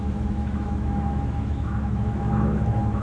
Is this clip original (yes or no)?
no